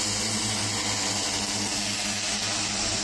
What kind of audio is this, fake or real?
real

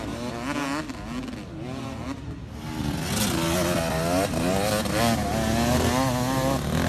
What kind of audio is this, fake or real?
real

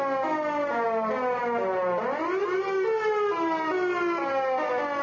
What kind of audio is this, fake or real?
real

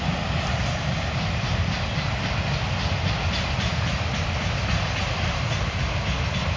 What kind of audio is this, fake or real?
real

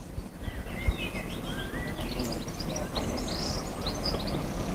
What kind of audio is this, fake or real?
real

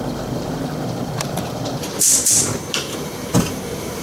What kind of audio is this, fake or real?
fake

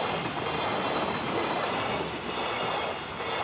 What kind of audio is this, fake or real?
real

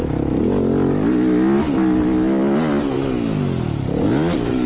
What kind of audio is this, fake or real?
real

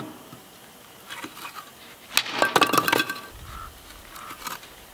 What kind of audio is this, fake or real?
real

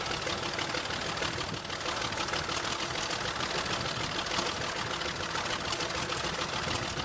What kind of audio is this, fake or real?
real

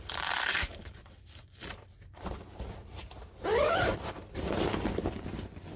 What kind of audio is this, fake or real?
fake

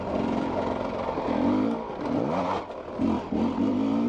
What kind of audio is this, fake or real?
real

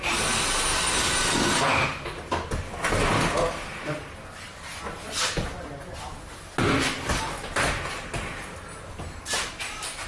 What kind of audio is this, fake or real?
real